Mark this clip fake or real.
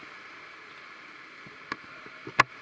real